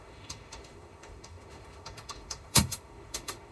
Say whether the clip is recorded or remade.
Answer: remade